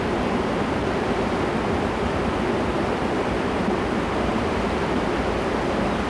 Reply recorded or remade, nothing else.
recorded